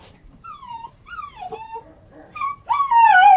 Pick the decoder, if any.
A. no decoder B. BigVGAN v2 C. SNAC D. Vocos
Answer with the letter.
B